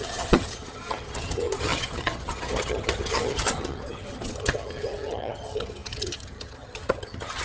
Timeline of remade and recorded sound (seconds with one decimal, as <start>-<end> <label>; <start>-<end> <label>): 0.0-7.4 remade

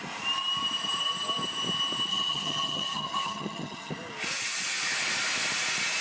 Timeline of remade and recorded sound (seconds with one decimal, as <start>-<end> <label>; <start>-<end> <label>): 0.0-2.1 recorded; 2.1-3.9 remade; 3.9-6.0 recorded

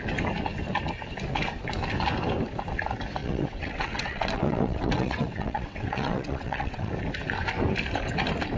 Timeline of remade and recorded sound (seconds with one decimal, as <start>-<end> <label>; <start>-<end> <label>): 0.0-3.2 recorded; 3.2-6.9 remade; 6.9-8.6 recorded

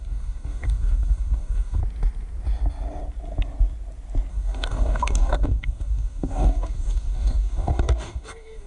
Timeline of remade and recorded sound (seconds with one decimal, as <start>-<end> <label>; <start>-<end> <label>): 0.0-1.8 remade; 1.8-4.3 recorded; 4.3-8.7 remade

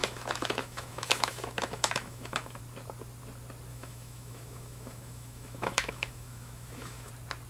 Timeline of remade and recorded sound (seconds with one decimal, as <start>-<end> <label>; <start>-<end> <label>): 0.0-2.6 remade; 2.6-3.7 recorded; 3.7-7.1 remade; 7.1-7.5 recorded